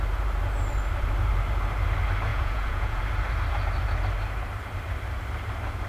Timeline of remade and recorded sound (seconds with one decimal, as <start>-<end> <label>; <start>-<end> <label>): 0.0-2.3 recorded; 2.3-3.0 remade; 3.0-5.9 recorded